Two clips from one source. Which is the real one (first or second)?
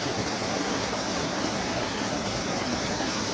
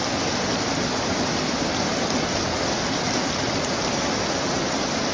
second